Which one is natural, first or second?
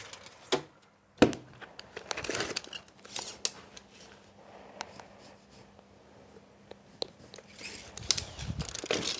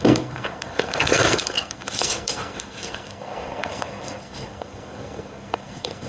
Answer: first